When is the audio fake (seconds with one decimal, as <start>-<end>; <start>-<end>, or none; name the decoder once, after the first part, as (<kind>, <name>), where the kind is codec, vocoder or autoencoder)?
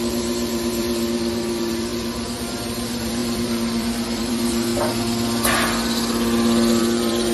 0.0-4.7 (vocoder, BigVGAN v2); 6.8-7.3